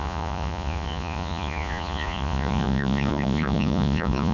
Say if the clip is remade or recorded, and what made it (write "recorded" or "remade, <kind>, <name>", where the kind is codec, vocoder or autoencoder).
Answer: remade, vocoder, Vocos